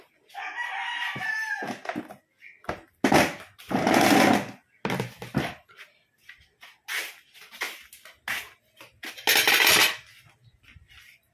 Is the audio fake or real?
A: real